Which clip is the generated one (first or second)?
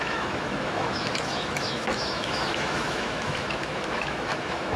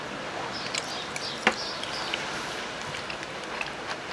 first